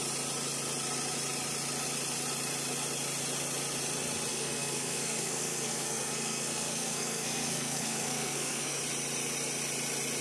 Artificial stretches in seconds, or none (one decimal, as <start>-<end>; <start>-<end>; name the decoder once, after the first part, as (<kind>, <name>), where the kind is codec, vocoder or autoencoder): 4.3-8.8 (codec, SNAC)